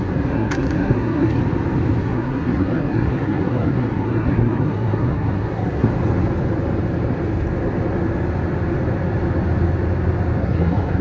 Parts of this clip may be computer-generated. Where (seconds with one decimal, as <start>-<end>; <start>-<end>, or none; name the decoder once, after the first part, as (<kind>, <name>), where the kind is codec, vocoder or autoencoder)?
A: 0.0-1.4 (codec, SNAC); 2.0-5.9; 10.4-11.0